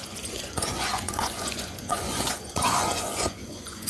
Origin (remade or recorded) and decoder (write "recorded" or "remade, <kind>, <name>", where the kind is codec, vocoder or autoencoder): remade, vocoder, Vocos